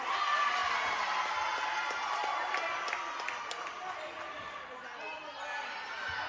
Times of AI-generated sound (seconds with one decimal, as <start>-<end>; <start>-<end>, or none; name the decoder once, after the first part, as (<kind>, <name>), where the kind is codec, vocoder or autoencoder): none